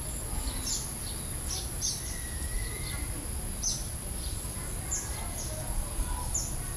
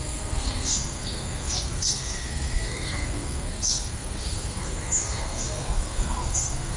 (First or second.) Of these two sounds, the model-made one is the second